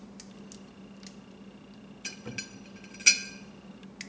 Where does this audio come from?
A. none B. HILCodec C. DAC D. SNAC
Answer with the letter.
A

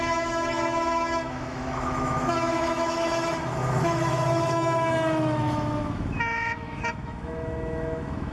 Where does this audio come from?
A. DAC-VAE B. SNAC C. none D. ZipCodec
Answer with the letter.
A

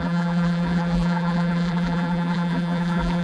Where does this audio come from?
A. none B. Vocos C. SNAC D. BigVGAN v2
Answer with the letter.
D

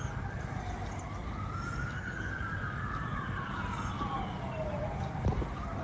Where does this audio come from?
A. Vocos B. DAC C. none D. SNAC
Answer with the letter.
C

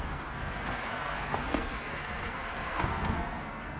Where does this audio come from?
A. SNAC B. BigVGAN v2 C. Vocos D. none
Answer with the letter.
A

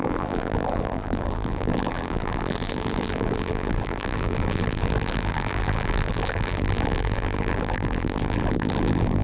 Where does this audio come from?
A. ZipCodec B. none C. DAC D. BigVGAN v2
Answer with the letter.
D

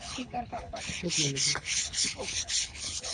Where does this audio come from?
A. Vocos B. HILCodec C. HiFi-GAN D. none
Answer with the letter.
B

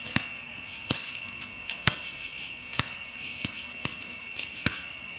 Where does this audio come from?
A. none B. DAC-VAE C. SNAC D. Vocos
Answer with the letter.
C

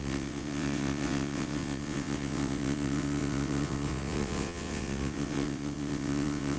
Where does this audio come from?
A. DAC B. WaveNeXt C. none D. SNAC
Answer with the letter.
B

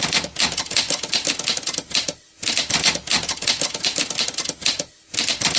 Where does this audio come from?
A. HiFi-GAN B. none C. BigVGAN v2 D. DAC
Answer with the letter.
B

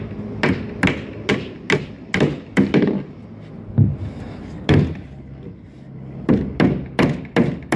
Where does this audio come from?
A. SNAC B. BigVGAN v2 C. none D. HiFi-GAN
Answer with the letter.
C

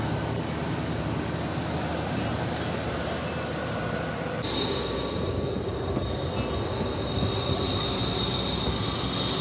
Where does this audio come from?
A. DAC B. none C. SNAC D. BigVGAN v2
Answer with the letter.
B